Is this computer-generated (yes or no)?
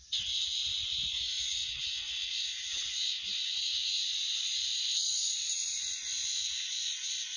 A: yes